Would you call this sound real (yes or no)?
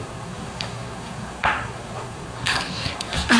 no